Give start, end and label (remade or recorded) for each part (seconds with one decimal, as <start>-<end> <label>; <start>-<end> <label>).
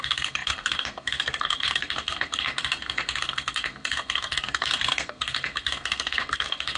0.0-6.8 remade